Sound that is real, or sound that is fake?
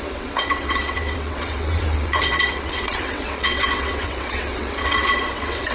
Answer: fake